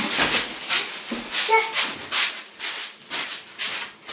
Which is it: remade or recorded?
recorded